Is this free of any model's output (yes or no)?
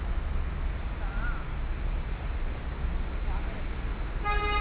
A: yes